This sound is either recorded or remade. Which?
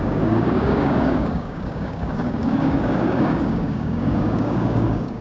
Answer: remade